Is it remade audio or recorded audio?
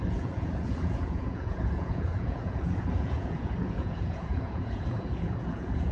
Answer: remade